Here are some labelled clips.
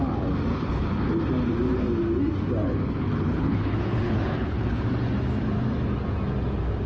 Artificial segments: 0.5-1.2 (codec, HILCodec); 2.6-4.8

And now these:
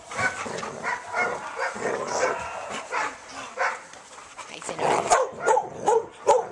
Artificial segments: none